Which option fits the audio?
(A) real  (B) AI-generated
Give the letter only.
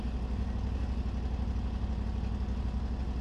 A